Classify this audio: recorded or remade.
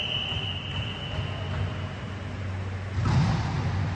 recorded